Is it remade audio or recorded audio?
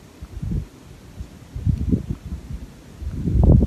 recorded